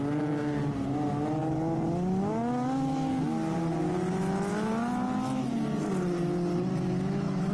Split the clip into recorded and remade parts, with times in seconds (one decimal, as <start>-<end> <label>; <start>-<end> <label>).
0.0-6.7 recorded; 6.7-7.5 remade